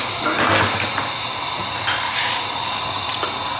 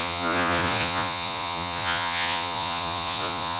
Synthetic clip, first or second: second